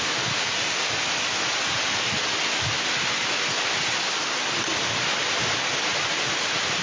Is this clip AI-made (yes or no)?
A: no